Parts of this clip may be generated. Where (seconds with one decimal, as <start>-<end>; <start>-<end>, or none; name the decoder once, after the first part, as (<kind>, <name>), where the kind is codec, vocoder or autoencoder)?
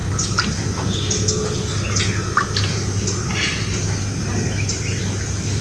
none